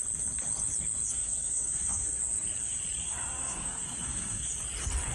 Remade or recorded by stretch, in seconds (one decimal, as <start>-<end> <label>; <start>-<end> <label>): 0.0-1.1 recorded; 1.1-2.2 remade; 2.2-3.4 recorded; 3.4-4.5 remade; 4.5-5.1 recorded